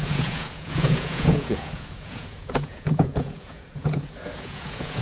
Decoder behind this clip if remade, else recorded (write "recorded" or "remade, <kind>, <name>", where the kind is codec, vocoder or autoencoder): remade, vocoder, Vocos